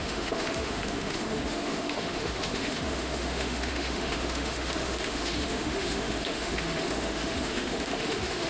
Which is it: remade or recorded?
remade